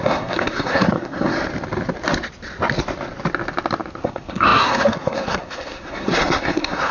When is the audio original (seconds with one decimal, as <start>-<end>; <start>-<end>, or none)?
1.3-4.0